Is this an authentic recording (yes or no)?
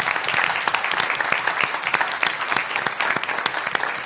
yes